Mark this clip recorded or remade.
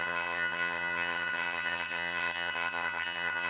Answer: remade